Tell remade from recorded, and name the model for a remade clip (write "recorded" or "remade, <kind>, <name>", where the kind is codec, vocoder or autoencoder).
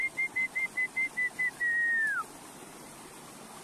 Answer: recorded